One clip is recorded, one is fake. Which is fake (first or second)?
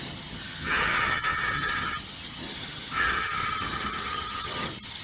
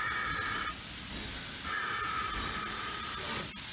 first